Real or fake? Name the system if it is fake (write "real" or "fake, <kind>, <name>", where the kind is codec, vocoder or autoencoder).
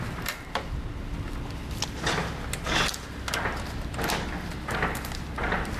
real